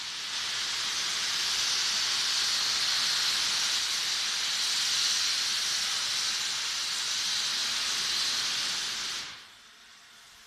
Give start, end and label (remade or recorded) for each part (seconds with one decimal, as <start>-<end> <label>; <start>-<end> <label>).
0.0-10.5 recorded